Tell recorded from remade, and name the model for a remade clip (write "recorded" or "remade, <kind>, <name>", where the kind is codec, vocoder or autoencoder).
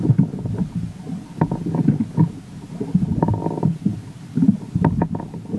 recorded